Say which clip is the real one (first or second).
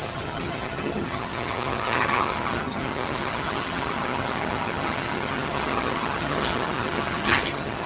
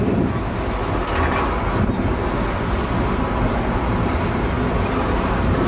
second